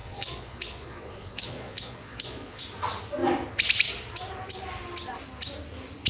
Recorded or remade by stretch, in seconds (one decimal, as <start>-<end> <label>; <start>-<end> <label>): 0.0-2.6 remade; 2.6-6.1 recorded